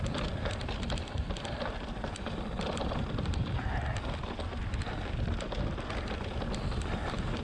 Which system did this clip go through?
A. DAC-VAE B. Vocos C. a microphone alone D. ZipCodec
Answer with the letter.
C